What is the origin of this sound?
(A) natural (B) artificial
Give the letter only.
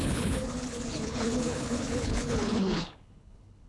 B